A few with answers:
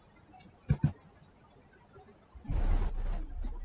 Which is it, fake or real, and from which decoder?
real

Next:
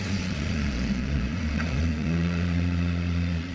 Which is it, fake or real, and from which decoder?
fake, vocoder, Vocos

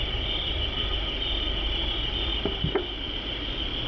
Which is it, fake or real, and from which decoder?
real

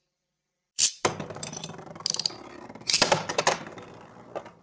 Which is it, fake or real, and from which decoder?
real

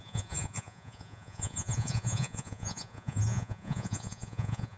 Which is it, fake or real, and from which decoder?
fake, vocoder, Vocos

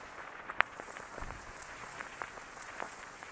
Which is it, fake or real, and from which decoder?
fake, vocoder, Vocos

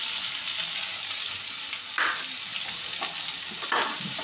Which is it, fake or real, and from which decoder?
real